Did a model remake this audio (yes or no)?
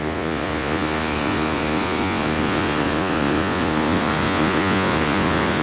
yes